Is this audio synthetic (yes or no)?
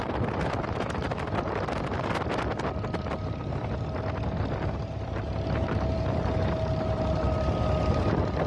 no